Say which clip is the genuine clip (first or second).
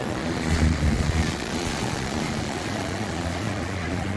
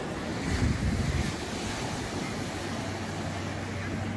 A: second